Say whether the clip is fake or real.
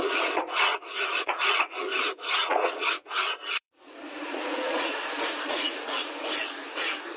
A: fake